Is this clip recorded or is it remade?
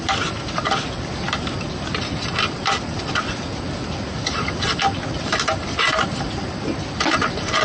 recorded